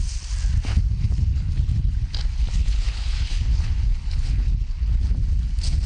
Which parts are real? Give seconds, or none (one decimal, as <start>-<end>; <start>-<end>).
0.0-0.7; 1.9-2.6; 4.9-5.9